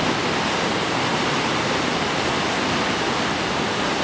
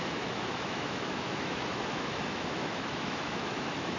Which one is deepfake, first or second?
second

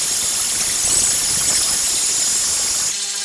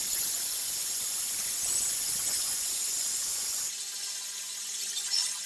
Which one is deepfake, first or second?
second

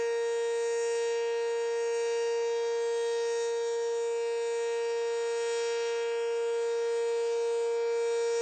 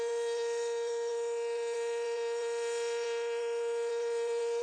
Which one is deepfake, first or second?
second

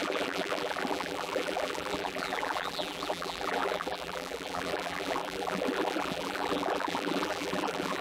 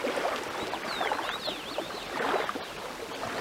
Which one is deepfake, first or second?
first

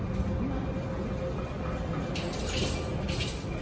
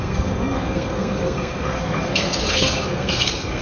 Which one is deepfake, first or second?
second